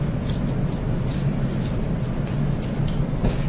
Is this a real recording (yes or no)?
yes